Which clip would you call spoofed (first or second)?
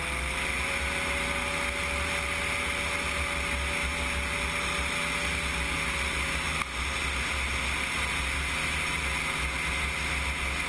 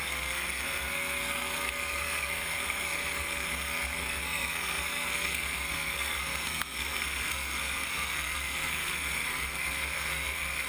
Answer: second